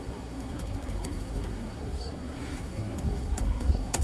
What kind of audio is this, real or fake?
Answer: fake